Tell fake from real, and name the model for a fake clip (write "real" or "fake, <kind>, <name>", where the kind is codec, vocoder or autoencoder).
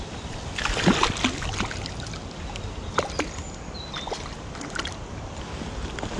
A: real